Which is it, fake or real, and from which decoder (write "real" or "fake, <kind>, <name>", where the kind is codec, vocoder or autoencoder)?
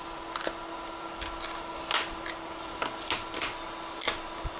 real